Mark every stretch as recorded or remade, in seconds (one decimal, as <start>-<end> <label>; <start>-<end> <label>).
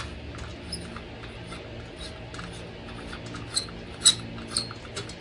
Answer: 0.0-5.2 recorded